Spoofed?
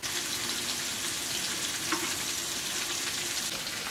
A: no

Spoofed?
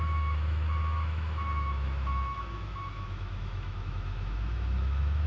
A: yes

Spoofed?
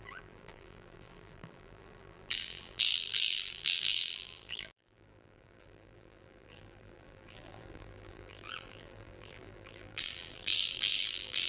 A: yes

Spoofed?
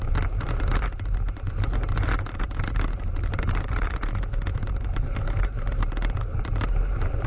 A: yes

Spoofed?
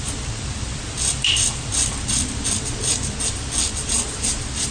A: yes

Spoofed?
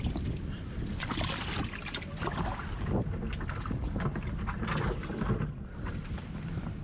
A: no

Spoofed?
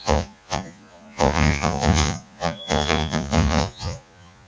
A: yes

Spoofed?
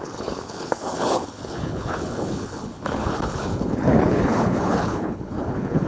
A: yes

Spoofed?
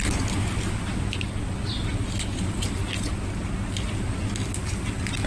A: no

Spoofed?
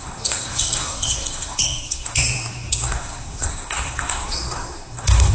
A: yes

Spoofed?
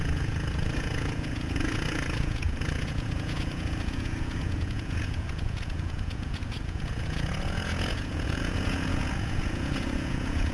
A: yes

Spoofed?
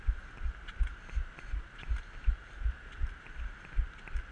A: no